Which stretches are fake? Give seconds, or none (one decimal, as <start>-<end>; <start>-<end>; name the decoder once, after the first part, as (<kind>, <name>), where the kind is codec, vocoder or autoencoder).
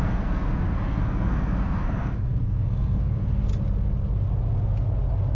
0.0-3.5 (codec, SNAC)